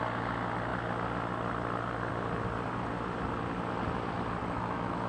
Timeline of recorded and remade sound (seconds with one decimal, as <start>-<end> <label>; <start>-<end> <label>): 0.0-4.4 recorded; 4.4-5.1 remade